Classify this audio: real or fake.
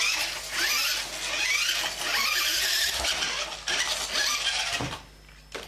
real